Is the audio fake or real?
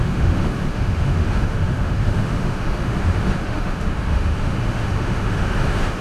fake